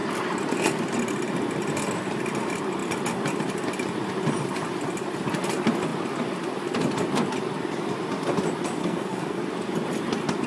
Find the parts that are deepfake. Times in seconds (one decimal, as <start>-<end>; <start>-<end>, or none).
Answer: 8.8-9.4